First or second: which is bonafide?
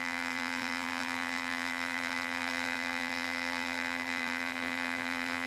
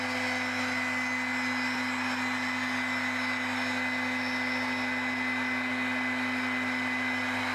second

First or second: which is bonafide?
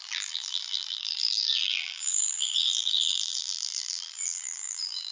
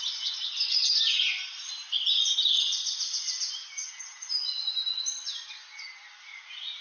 second